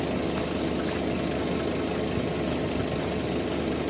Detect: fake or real real